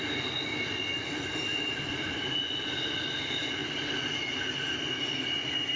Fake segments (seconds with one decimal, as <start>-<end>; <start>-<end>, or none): none